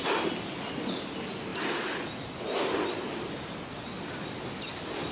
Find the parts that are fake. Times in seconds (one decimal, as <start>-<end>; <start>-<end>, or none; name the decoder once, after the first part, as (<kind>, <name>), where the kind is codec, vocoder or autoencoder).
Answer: none